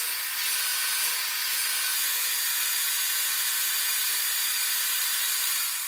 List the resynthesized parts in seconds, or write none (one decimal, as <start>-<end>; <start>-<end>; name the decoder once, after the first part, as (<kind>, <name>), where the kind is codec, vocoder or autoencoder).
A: 0.7-4.2 (vocoder, Vocos)